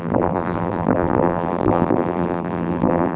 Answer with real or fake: fake